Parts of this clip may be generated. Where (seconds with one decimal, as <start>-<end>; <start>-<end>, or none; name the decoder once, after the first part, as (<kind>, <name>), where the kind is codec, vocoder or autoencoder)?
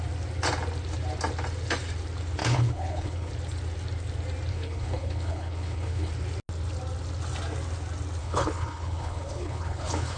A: 2.4-3.3 (codec, HILCodec); 4.5-6.1; 8.2-10.2